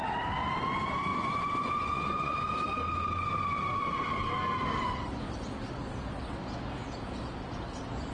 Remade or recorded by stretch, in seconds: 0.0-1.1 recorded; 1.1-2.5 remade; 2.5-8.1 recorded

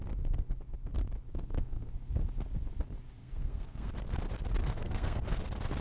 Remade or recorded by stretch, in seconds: 0.0-1.3 recorded; 1.3-1.9 remade; 1.9-3.2 recorded; 3.2-3.9 remade; 3.9-4.6 recorded; 4.6-5.3 remade; 5.3-5.8 recorded

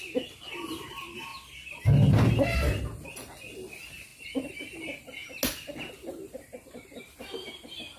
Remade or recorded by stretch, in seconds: 0.0-8.0 recorded

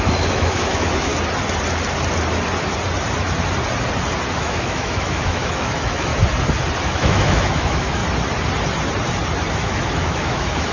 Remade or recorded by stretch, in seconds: 0.0-1.1 remade; 1.1-4.3 recorded; 4.3-6.1 remade; 6.1-6.8 recorded; 6.8-8.0 remade; 8.0-9.5 recorded; 9.5-10.7 remade

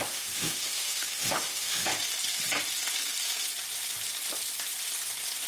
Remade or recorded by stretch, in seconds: 0.0-1.9 remade; 1.9-5.5 recorded